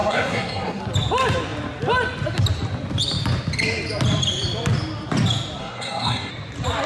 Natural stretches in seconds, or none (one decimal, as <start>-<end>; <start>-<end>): 0.8-5.6; 6.3-6.9